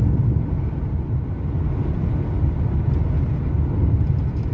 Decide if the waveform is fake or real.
real